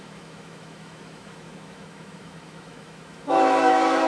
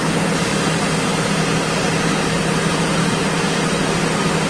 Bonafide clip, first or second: second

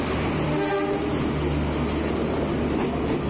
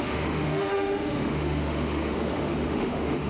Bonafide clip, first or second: first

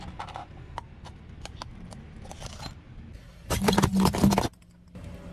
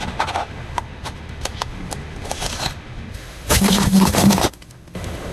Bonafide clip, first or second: first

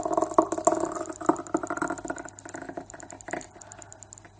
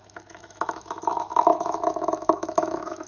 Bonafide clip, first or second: first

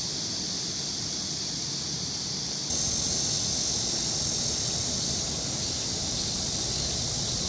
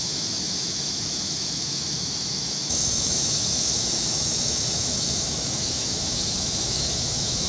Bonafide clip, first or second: first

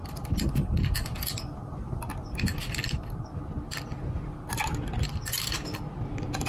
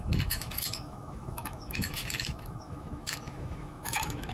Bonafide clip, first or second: first